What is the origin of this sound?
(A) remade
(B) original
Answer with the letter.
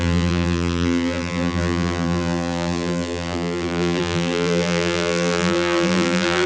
A